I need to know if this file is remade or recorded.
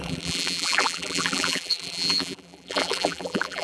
remade